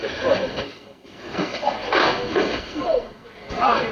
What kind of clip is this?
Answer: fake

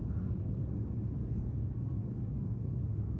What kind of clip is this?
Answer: fake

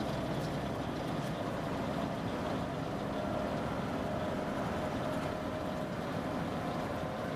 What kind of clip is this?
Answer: real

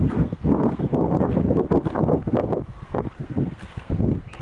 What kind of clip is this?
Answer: fake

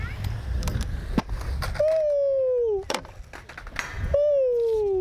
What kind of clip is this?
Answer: real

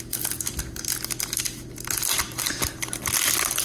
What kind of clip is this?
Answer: real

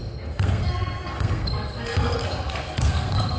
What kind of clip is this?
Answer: fake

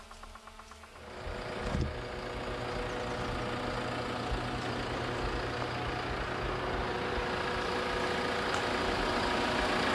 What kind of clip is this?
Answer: real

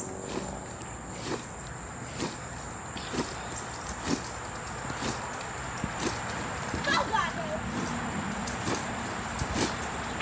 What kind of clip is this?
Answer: real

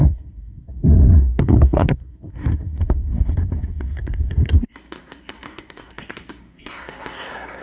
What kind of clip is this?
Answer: fake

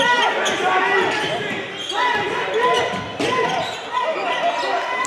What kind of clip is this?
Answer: real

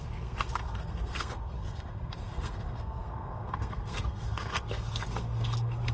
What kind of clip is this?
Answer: fake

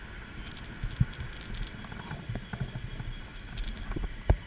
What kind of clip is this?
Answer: real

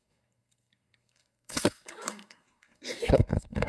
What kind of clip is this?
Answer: fake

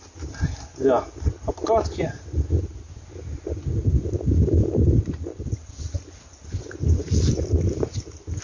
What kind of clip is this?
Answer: real